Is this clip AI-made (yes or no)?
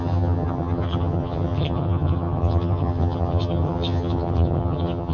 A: yes